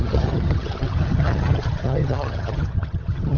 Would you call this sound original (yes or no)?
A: no